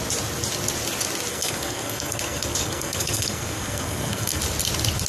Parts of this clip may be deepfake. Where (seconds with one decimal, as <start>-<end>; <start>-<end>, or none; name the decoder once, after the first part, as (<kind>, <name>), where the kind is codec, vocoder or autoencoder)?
1.3-4.4 (codec, SNAC)